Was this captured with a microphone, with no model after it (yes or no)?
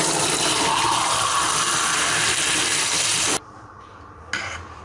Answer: yes